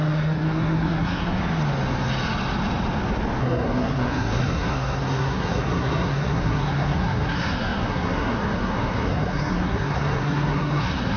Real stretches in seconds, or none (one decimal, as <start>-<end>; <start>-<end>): 1.4-3.4